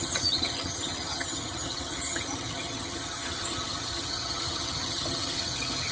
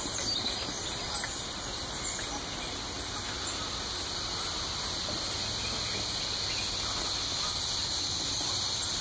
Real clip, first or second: second